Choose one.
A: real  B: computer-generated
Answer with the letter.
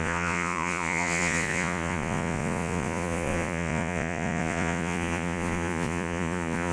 B